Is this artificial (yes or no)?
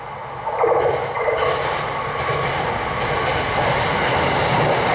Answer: no